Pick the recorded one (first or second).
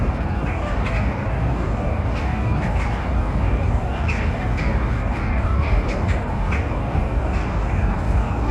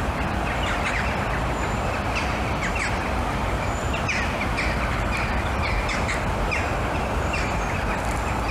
second